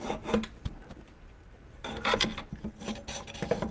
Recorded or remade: recorded